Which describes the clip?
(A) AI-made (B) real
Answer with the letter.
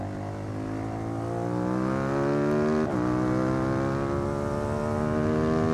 B